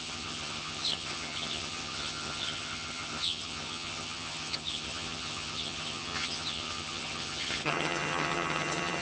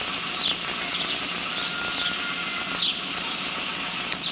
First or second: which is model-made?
first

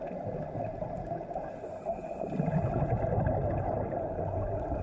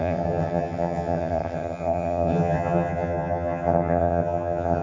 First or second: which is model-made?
second